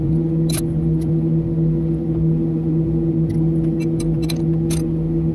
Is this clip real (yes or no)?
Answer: yes